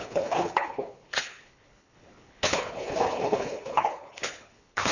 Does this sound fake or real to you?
fake